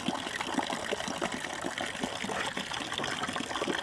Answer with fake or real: real